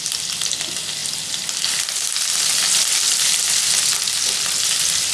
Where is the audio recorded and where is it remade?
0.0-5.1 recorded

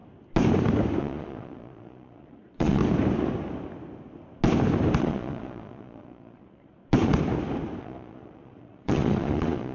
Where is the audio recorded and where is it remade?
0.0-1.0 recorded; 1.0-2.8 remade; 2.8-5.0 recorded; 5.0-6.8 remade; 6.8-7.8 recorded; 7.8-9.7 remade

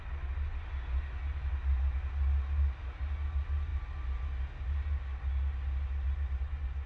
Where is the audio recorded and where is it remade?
0.0-6.9 recorded

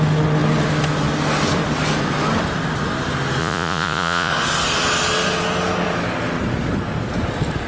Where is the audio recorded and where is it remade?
0.0-3.4 recorded; 3.4-4.3 remade; 4.3-7.7 recorded